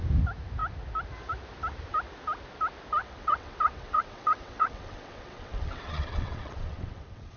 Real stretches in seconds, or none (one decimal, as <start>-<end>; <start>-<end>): 0.0-3.0